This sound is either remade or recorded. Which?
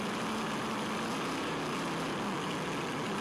recorded